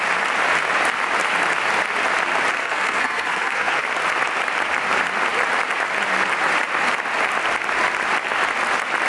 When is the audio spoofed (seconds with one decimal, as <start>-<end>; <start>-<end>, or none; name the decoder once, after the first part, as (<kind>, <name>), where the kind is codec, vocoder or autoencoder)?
2.6-3.8 (codec, SNAC)